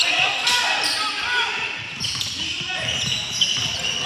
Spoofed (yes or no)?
no